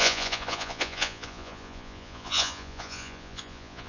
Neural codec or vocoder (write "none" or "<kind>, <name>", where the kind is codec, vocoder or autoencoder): vocoder, Vocos